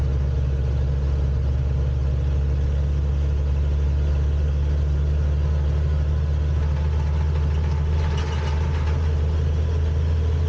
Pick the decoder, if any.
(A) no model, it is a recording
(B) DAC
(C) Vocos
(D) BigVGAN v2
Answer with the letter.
A